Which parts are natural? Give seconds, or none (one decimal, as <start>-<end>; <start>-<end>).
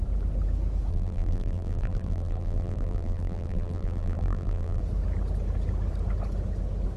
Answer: 0.0-0.9; 4.8-7.0